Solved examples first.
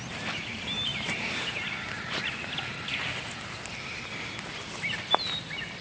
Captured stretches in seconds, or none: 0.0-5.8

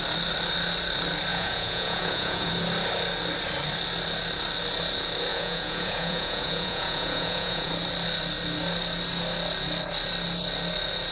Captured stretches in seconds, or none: 0.0-1.3; 2.5-5.3; 7.7-11.1

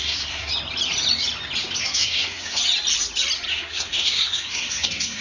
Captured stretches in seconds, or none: 0.5-1.8; 2.6-3.5

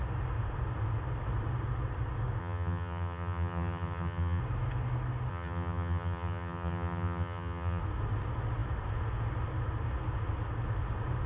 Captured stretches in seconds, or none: 0.0-2.4; 4.4-5.3; 7.8-11.3